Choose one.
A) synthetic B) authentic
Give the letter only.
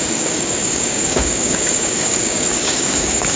A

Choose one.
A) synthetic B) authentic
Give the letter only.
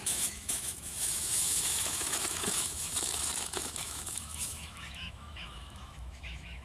A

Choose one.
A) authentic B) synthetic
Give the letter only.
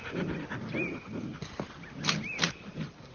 A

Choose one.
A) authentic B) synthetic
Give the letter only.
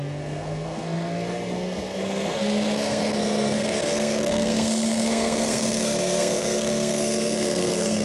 B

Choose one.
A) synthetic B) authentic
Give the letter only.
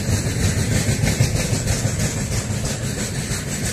B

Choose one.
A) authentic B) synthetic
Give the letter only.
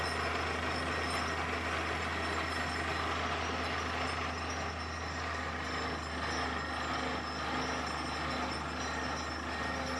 A